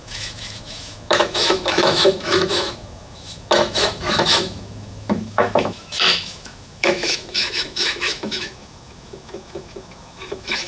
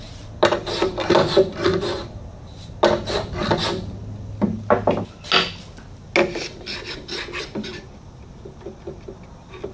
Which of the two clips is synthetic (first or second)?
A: first